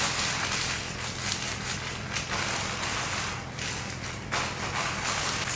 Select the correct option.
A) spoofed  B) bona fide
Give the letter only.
B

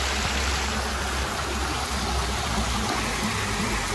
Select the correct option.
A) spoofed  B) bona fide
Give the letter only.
B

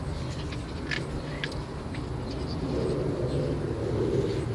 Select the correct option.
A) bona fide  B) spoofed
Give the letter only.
A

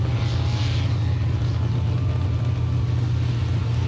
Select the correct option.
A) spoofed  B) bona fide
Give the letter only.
B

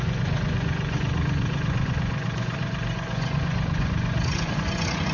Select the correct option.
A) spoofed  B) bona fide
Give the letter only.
A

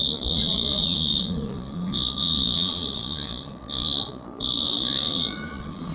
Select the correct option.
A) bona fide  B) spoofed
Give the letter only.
B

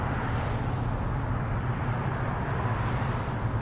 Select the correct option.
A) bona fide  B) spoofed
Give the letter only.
A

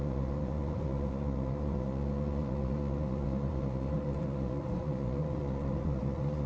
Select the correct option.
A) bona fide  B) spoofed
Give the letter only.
B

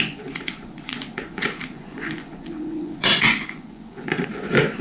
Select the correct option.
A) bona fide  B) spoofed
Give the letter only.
B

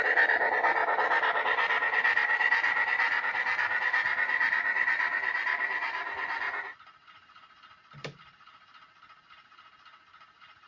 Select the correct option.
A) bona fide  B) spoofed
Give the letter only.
A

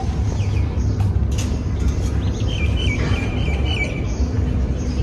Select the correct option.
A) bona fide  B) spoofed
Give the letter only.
A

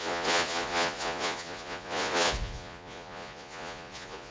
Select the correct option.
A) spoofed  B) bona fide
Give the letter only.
A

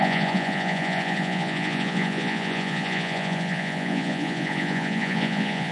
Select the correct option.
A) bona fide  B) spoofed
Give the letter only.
B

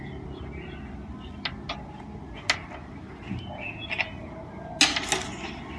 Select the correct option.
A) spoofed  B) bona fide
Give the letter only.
B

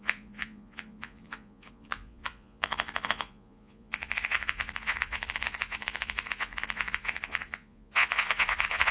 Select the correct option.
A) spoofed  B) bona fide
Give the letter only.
A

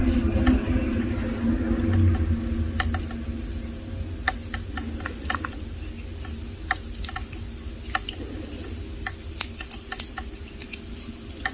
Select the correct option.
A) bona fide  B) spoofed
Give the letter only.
A